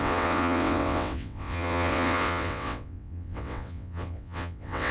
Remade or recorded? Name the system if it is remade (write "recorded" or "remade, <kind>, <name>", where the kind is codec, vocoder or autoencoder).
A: remade, vocoder, WaveNeXt